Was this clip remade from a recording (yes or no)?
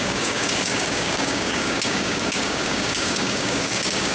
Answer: yes